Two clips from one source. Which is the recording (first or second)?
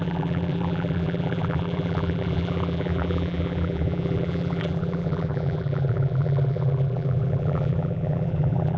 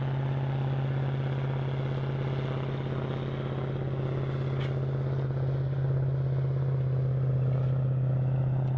second